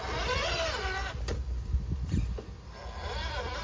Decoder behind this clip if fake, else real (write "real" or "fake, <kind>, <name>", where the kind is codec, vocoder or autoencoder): real